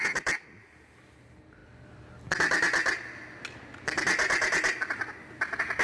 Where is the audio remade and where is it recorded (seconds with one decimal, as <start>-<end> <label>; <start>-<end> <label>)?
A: 0.0-5.8 recorded